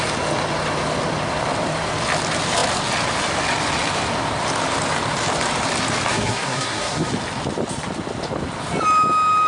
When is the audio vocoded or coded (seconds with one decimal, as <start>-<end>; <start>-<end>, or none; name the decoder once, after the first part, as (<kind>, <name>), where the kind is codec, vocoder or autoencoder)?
6.1-7.1 (codec, SNAC)

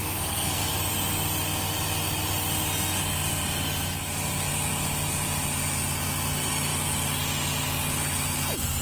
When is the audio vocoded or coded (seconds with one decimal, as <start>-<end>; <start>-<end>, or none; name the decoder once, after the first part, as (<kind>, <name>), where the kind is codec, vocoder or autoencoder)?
0.0-0.7 (codec, SNAC)

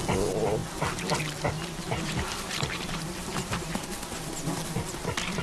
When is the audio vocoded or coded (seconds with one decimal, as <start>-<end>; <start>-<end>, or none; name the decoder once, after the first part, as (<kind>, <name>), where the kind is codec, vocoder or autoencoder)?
0.6-3.8 (vocoder, BigVGAN v2)

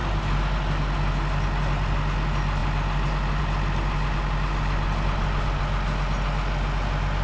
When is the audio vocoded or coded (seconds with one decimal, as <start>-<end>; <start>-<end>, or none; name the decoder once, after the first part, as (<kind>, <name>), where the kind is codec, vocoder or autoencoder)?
none

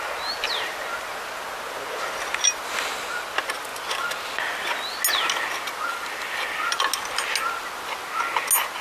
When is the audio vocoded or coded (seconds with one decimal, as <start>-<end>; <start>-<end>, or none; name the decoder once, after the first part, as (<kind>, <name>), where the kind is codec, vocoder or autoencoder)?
none

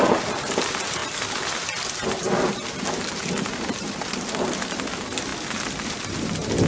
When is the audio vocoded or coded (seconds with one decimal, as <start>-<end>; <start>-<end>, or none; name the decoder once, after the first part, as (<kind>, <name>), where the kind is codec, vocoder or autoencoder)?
none